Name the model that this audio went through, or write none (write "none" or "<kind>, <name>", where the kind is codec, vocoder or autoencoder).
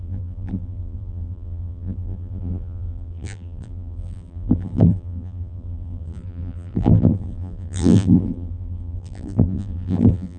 vocoder, BigVGAN v2